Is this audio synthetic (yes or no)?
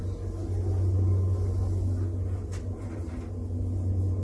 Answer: no